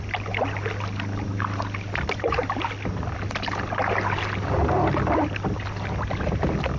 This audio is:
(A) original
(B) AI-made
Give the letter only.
A